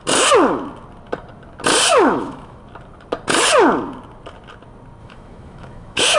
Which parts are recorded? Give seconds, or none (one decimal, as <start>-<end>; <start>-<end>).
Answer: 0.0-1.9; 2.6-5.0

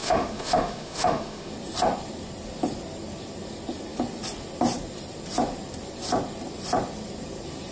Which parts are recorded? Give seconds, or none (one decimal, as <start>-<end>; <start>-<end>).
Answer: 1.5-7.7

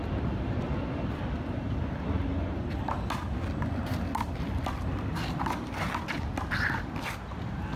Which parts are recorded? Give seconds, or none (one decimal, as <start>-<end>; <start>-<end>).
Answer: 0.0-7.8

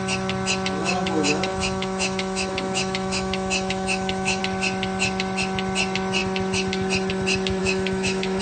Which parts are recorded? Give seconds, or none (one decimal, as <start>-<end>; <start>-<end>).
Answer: 0.0-0.8; 4.4-7.6

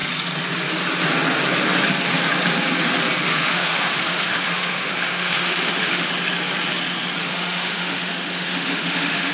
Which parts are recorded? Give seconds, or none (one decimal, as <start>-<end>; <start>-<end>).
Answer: 0.0-3.3; 6.1-7.2